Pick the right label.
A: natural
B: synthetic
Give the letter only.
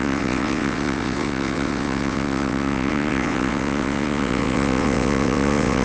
B